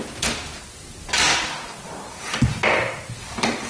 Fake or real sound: real